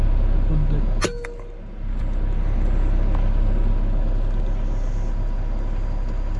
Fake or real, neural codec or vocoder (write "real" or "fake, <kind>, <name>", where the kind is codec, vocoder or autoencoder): real